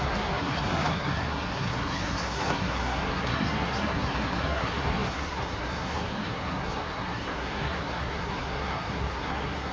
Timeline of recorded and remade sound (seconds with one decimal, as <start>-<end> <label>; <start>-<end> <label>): 0.0-9.7 remade